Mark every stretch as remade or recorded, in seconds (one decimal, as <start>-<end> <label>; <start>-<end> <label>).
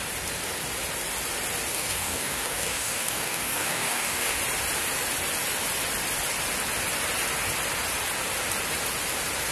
0.0-1.7 recorded; 1.7-4.4 remade; 4.4-9.5 recorded